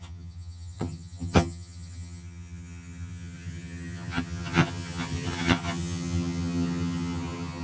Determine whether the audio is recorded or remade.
remade